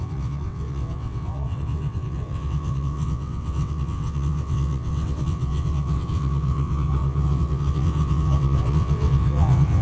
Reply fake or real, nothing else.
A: fake